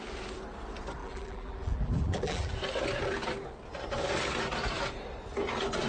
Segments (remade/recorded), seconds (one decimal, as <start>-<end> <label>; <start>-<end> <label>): 0.0-1.0 recorded; 1.0-2.5 remade; 2.5-5.9 recorded